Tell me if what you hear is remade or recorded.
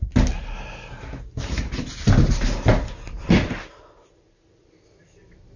recorded